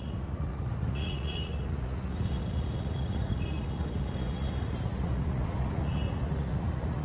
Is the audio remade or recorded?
remade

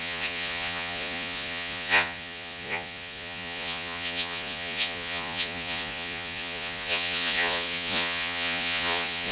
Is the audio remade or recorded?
remade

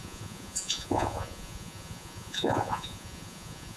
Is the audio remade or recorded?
remade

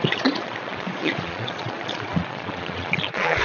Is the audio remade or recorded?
remade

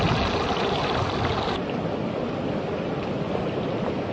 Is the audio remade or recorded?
recorded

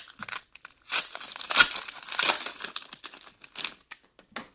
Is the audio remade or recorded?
recorded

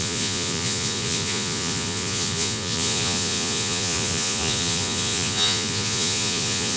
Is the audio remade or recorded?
remade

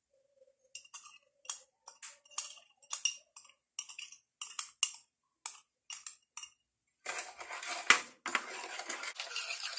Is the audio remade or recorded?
recorded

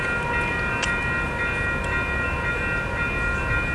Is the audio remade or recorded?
recorded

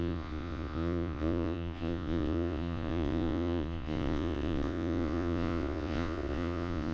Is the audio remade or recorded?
remade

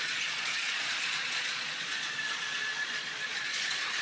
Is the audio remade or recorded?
remade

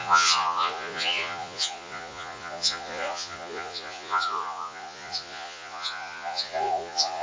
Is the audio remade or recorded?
remade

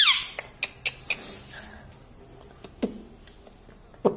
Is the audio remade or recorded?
recorded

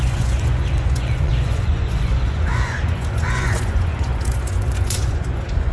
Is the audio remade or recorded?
remade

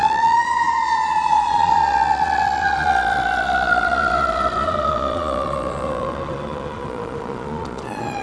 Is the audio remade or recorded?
remade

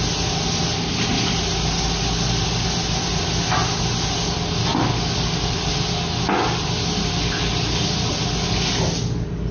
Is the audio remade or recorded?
recorded